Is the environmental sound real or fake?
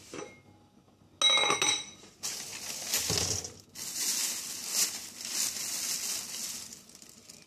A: real